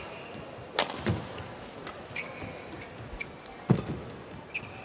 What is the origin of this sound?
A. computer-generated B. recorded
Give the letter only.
B